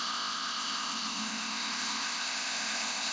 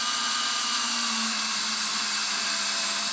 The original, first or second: second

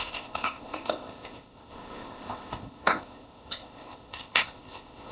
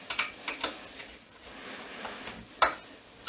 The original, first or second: second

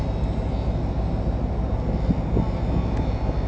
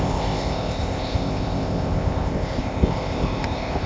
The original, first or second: first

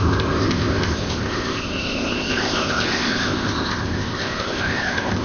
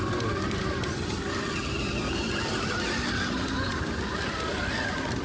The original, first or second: second